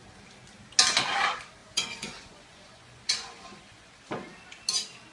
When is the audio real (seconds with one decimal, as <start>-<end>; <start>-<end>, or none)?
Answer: 0.0-1.6; 3.9-5.1